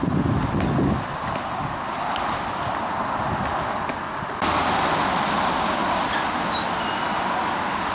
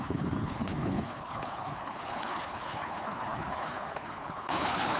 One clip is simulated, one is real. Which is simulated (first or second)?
second